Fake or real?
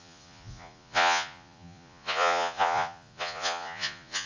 fake